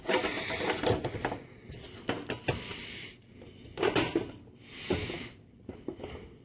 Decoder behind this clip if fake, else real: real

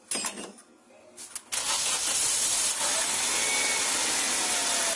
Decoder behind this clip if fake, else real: real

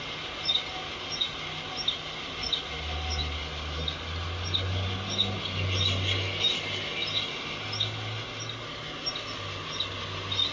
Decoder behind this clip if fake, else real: real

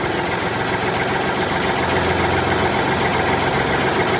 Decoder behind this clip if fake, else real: real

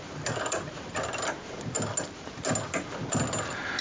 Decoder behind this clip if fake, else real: real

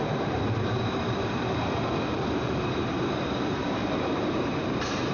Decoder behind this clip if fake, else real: fake, vocoder, BigVGAN v2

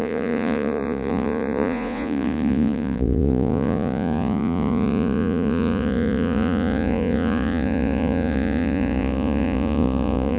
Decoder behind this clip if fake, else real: fake, vocoder, Vocos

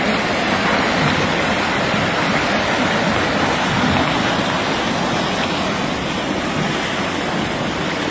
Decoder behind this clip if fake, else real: real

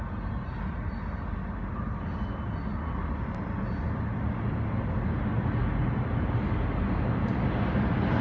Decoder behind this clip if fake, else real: real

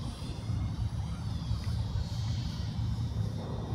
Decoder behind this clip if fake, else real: fake, vocoder, BigVGAN v2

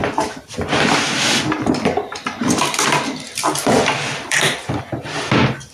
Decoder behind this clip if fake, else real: fake, vocoder, BigVGAN v2